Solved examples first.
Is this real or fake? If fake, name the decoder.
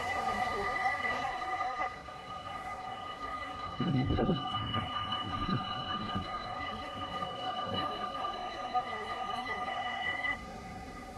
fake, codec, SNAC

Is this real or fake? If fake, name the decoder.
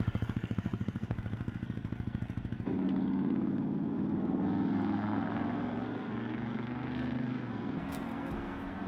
fake, codec, SNAC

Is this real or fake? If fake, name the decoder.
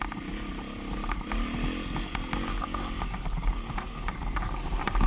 real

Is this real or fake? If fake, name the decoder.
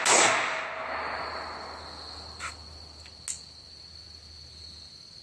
real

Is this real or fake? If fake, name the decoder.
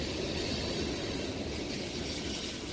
real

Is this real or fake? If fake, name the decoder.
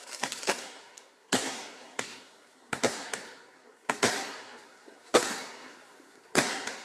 fake, codec, SNAC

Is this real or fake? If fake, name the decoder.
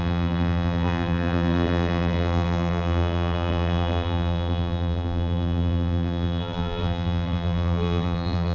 fake, vocoder, BigVGAN v2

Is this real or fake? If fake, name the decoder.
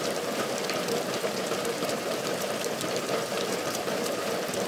fake, vocoder, BigVGAN v2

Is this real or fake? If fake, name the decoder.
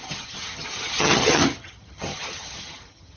fake, vocoder, HiFi-GAN